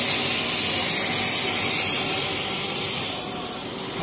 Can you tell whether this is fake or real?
real